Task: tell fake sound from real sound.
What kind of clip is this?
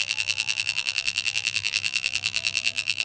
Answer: fake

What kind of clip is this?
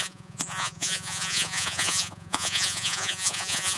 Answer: fake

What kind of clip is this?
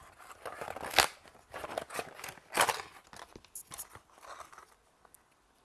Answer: real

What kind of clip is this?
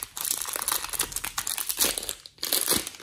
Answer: real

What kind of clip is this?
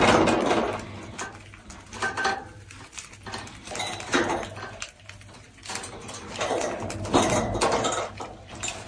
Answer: real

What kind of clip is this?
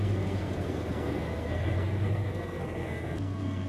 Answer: fake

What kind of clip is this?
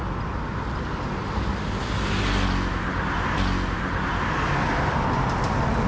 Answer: real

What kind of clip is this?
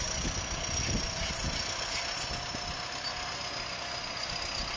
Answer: real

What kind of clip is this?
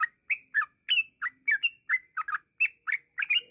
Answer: real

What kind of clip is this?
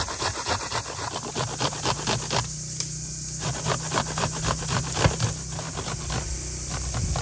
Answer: real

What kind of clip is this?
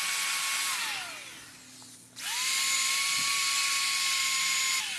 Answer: real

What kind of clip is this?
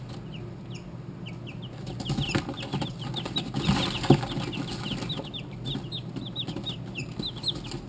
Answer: real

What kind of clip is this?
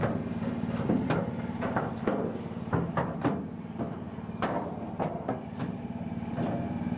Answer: fake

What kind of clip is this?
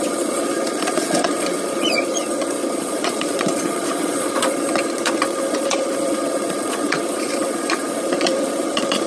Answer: fake